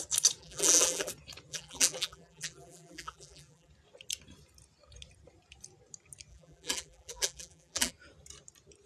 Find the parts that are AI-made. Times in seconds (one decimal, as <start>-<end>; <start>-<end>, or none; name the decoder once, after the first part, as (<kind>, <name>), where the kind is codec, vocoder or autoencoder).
0.4-1.1 (vocoder, BigVGAN v2); 1.5-3.7; 6.3-7.9